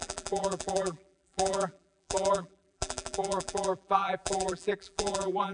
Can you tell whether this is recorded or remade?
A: remade